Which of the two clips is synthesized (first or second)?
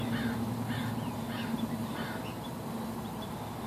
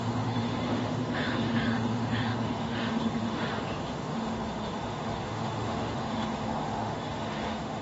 second